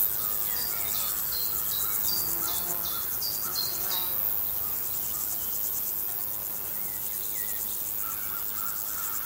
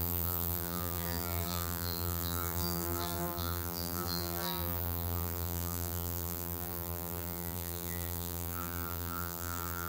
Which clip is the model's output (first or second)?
second